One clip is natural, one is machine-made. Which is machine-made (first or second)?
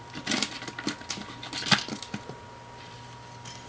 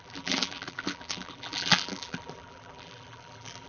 second